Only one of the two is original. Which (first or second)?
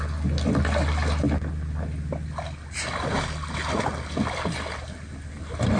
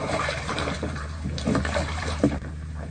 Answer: first